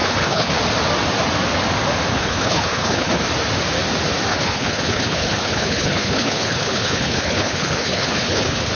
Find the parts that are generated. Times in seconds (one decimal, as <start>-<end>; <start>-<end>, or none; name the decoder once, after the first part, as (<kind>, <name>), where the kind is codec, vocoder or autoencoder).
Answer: 0.0-0.6 (codec, HILCodec); 2.1-3.2; 4.3-8.7